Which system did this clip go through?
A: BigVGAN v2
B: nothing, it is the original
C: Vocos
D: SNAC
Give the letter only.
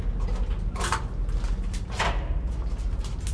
B